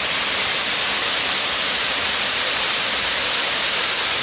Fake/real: real